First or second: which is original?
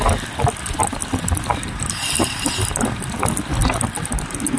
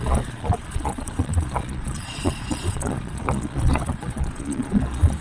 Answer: first